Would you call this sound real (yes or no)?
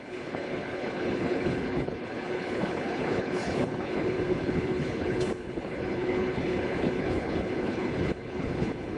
no